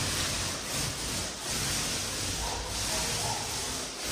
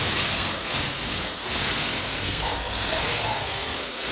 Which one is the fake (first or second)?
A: second